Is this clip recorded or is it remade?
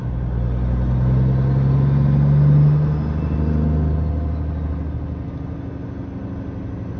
recorded